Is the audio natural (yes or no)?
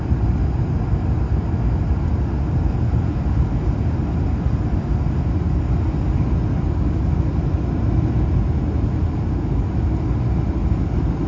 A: yes